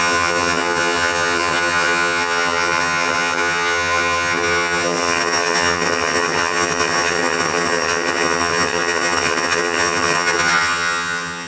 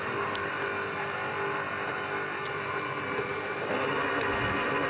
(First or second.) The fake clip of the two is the first